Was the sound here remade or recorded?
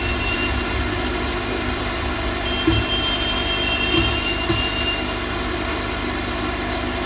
recorded